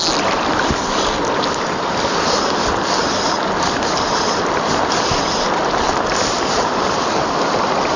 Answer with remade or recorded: recorded